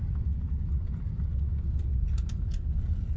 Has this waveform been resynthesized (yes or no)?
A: no